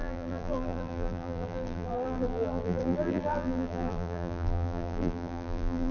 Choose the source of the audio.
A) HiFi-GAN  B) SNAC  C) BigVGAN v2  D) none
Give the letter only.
C